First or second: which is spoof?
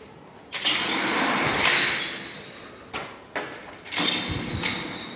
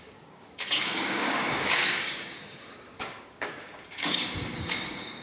second